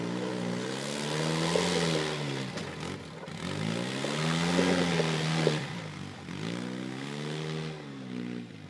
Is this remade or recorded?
recorded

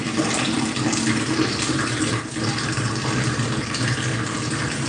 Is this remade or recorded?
recorded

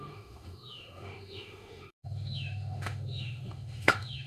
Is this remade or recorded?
remade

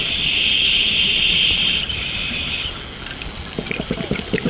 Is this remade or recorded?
recorded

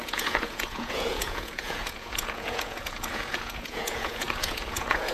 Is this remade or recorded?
remade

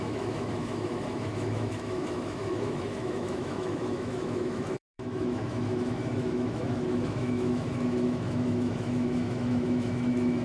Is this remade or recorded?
remade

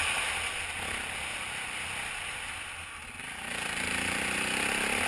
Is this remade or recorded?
recorded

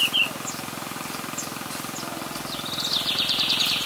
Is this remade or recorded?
recorded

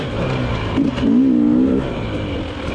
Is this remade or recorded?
recorded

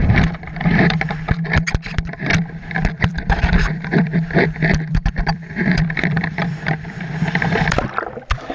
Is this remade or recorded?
remade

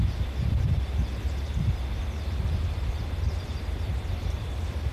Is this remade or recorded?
remade